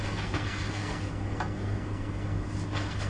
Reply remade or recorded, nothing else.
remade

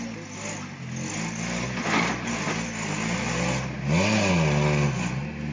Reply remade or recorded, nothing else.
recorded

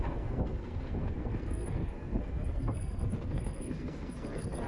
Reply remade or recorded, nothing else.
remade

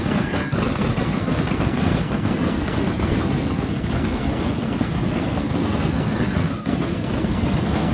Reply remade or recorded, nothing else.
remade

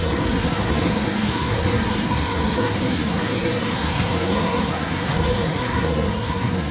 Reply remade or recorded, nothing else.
remade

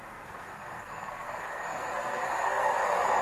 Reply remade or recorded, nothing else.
remade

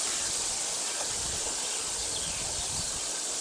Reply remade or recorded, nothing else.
recorded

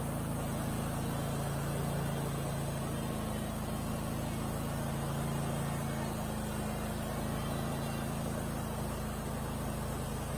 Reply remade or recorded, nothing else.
recorded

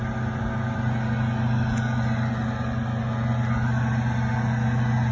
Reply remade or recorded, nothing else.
recorded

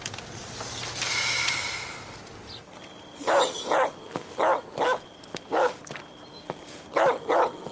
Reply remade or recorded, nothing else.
recorded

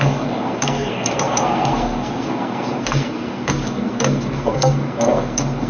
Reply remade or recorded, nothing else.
remade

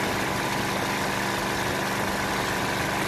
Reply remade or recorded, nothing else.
recorded